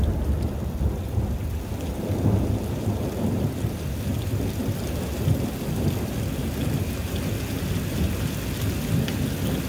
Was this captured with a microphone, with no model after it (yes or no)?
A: yes